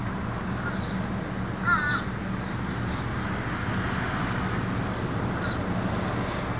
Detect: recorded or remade recorded